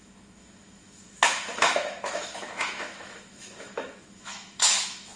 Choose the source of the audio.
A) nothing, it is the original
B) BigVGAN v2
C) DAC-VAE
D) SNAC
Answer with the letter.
C